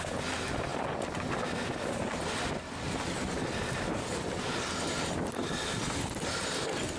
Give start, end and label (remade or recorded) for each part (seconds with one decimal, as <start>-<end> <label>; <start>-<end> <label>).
0.0-5.4 recorded; 5.4-6.4 remade; 6.4-7.0 recorded